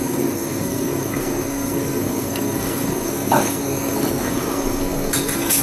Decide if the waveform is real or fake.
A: fake